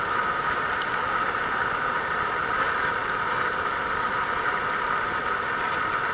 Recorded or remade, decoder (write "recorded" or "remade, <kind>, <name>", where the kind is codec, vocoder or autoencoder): recorded